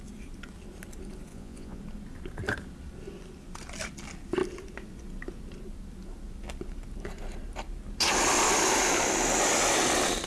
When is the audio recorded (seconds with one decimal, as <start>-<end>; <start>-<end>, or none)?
0.0-1.3; 1.8-10.3